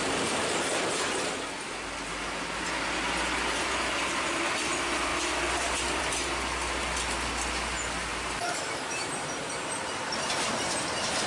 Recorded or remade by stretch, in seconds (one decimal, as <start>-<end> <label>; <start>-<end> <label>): 0.0-8.1 recorded; 8.1-9.5 remade; 9.5-11.3 recorded